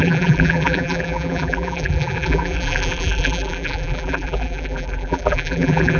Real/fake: fake